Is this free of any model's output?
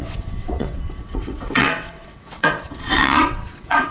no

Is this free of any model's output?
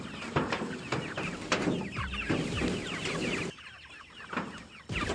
yes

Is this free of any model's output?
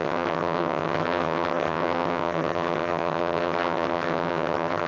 no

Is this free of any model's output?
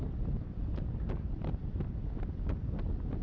yes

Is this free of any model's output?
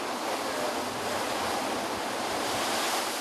yes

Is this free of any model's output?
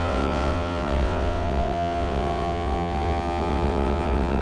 no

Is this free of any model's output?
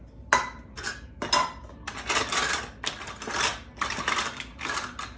yes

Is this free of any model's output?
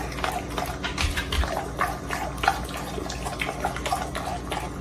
yes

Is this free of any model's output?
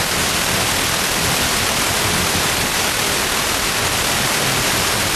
yes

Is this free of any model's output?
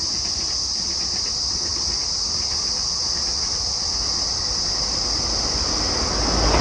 yes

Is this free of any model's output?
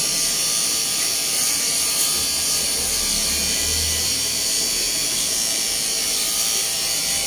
yes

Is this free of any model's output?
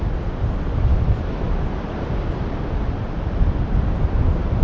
yes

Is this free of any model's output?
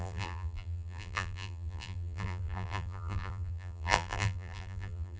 no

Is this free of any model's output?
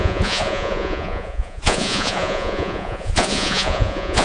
no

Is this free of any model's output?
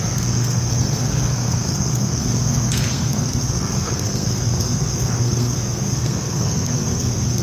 no